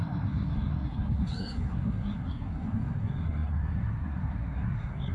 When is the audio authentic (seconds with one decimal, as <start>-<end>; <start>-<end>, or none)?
none